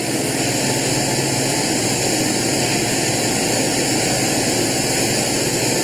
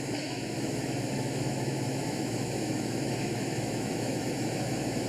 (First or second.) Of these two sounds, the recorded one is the first